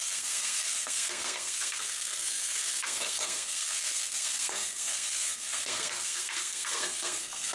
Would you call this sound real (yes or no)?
no